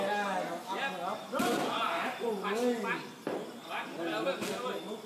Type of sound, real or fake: real